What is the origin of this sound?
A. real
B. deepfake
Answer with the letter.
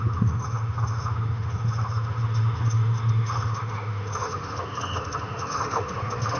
B